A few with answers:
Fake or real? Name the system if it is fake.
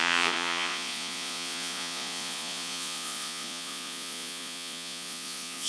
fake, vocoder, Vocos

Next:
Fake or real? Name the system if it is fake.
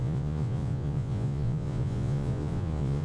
fake, vocoder, Vocos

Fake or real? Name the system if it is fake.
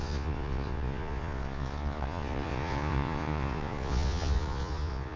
fake, vocoder, Vocos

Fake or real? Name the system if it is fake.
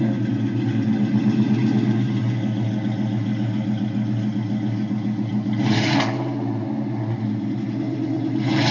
real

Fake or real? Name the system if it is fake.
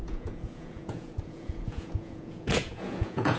fake, vocoder, Vocos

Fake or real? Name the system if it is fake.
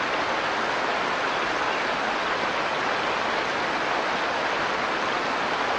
real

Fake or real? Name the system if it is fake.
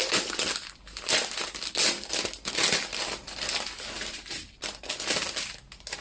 real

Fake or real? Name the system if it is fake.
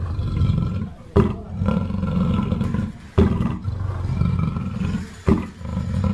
real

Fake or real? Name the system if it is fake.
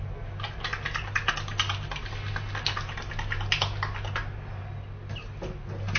real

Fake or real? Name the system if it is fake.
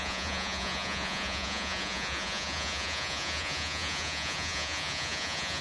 fake, vocoder, Vocos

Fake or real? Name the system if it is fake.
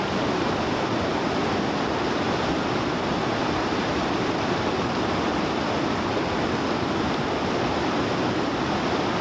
real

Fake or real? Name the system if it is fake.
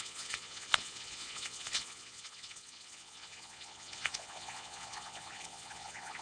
fake, vocoder, Vocos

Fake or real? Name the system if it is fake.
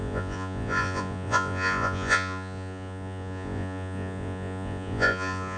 fake, vocoder, Vocos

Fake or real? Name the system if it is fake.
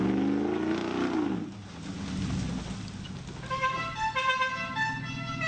real